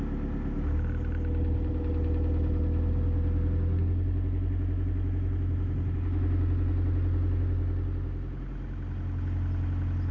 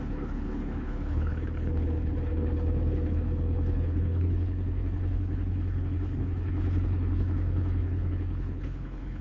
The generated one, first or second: second